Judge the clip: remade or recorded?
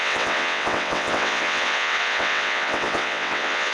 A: remade